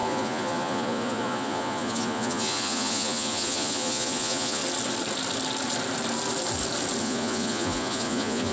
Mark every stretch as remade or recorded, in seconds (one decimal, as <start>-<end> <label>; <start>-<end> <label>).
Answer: 0.0-4.6 remade; 4.6-7.0 recorded; 7.0-8.5 remade